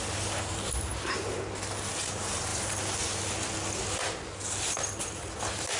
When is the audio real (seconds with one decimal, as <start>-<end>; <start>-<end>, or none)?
0.0-5.8